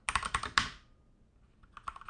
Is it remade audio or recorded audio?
recorded